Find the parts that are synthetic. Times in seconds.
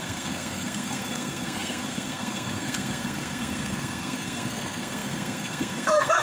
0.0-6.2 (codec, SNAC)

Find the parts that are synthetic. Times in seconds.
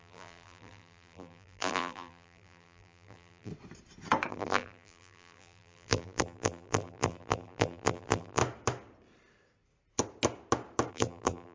0.0-3.5 (vocoder, BigVGAN v2); 4.3-8.4; 10.9-11.5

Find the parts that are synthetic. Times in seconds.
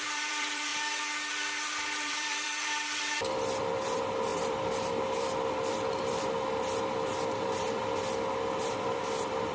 0.0-0.7 (vocoder, BigVGAN v2); 1.3-9.5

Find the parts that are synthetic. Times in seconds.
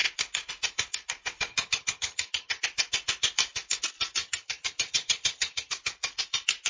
1.5-2.6 (vocoder, HiFi-GAN); 4.2-5.7